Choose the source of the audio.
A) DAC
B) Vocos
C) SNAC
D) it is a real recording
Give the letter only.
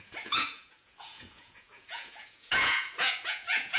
B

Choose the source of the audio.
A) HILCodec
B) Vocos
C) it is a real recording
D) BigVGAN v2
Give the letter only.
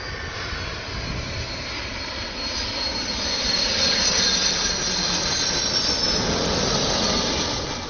C